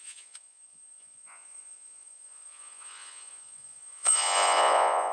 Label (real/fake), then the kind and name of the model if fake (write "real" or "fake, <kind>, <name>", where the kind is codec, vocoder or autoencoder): fake, vocoder, Vocos